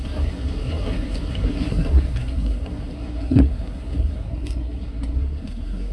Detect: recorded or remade remade